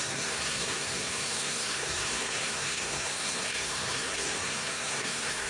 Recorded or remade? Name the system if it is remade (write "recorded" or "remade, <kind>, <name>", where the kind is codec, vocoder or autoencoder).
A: remade, codec, SNAC